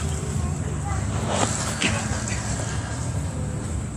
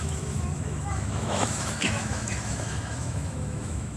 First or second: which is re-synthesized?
second